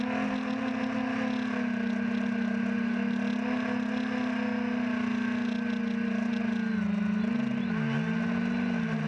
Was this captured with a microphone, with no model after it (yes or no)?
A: yes